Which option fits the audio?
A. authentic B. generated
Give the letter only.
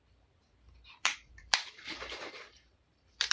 B